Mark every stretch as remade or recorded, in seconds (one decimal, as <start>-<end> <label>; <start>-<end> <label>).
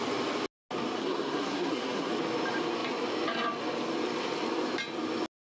0.0-1.0 recorded; 1.0-2.1 remade; 2.1-5.5 recorded